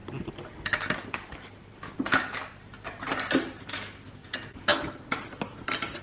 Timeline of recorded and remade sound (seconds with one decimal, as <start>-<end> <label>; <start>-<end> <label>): 0.0-3.6 recorded; 3.6-4.2 remade; 4.2-6.0 recorded